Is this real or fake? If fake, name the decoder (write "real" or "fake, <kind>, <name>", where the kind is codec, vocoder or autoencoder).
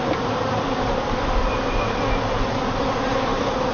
real